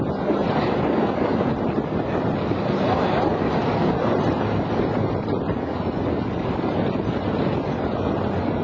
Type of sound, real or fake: real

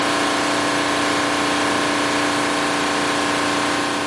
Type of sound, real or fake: real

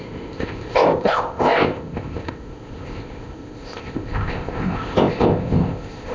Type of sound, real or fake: fake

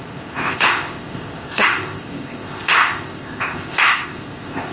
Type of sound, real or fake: fake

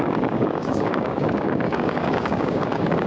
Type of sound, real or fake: fake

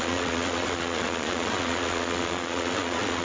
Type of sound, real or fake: fake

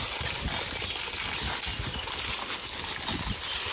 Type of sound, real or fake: real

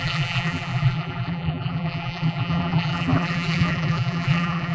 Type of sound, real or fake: fake